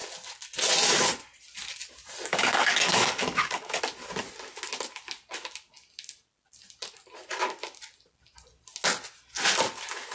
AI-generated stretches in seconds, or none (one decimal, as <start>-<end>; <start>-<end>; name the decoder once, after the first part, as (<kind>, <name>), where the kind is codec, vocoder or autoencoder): 2.3-3.8 (codec, DAC)